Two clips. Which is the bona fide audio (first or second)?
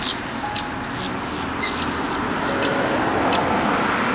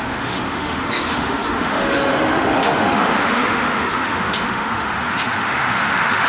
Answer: first